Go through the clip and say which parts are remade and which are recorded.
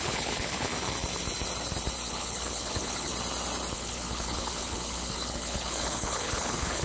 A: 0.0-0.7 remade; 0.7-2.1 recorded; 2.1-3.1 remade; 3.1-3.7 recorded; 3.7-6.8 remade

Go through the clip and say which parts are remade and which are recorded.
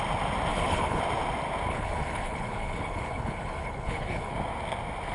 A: 0.0-0.5 recorded; 0.5-1.0 remade; 1.0-1.7 recorded; 1.7-4.3 remade; 4.3-5.1 recorded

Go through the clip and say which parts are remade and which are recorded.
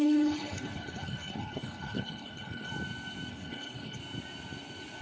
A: 0.0-2.7 remade; 2.7-3.3 recorded; 3.3-4.0 remade; 4.0-5.0 recorded